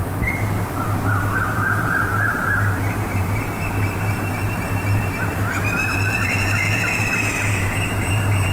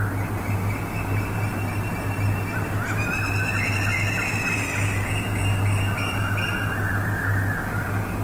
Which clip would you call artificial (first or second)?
first